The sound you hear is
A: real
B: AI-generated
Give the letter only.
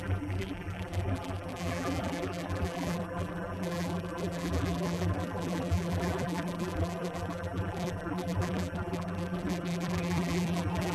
B